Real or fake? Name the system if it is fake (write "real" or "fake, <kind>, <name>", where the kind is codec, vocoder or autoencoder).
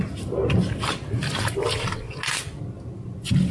real